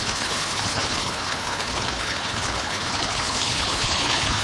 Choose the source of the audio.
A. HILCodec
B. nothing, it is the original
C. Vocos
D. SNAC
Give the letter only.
A